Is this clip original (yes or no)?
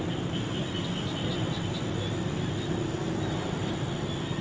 yes